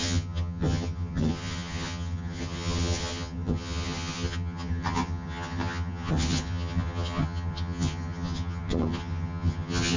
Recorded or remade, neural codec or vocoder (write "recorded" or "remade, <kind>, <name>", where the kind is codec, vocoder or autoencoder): remade, vocoder, HiFi-GAN